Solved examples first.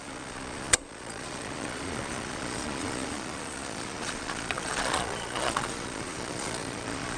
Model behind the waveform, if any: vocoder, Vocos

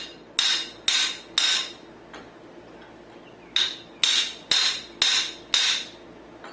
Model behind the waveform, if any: none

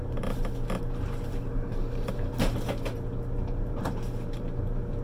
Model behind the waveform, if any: vocoder, BigVGAN v2